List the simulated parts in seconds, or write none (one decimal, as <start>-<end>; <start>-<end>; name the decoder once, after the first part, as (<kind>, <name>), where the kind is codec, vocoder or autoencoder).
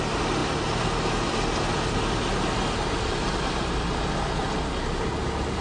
none